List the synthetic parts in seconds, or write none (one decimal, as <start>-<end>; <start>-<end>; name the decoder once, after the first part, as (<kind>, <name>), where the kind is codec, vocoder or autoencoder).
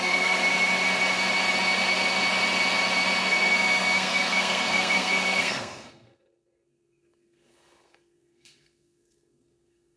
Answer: 0.0-0.4 (codec, SNAC); 3.2-10.0